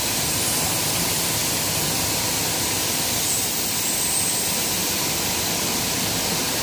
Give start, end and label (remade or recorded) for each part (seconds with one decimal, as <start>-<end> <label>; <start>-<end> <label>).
0.0-1.4 recorded; 1.4-5.1 remade; 5.1-6.6 recorded

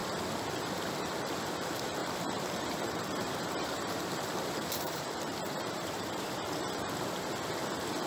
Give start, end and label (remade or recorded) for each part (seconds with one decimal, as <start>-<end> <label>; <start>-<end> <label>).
0.0-2.0 recorded; 2.0-6.9 remade; 6.9-8.1 recorded

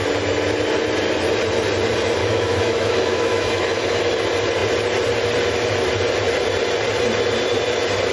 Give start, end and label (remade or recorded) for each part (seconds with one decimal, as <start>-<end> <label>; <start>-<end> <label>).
0.0-2.2 recorded; 2.2-4.0 remade; 4.0-8.1 recorded

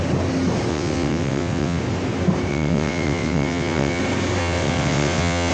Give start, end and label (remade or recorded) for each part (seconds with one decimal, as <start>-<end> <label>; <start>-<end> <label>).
0.0-0.7 recorded; 0.7-1.8 remade; 1.8-2.5 recorded; 2.5-4.0 remade; 4.0-4.4 recorded; 4.4-5.5 remade

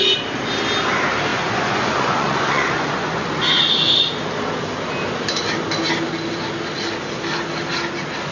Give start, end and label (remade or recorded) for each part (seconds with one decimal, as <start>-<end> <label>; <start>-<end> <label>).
0.0-1.3 recorded; 1.3-3.3 remade; 3.3-8.3 recorded

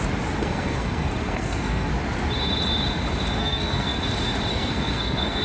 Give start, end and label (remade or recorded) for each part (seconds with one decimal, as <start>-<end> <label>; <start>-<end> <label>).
0.0-0.4 recorded; 0.4-1.9 remade; 1.9-3.4 recorded; 3.4-4.0 remade; 4.0-4.5 recorded; 4.5-5.4 remade